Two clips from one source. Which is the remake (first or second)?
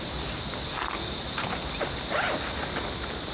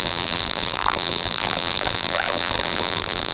second